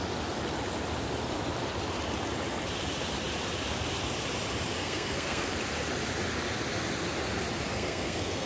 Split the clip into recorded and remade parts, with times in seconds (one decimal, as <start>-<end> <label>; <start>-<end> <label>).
0.0-4.8 recorded; 4.8-5.5 remade; 5.5-7.7 recorded; 7.7-8.5 remade